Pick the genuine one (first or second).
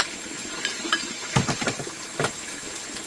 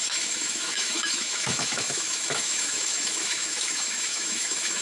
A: first